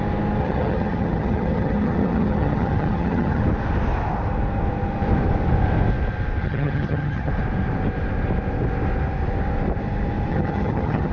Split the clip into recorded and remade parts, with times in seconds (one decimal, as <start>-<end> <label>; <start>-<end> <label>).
0.0-0.4 recorded; 0.4-3.4 remade; 3.4-6.4 recorded; 6.4-7.3 remade; 7.3-10.3 recorded; 10.3-11.1 remade